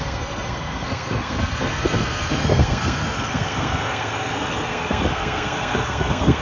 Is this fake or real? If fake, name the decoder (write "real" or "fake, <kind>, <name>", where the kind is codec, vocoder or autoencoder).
fake, codec, SNAC